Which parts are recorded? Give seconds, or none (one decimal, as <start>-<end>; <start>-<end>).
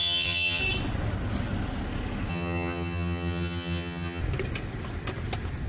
0.6-2.3; 4.2-5.7